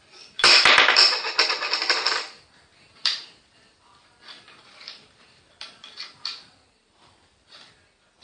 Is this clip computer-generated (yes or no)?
yes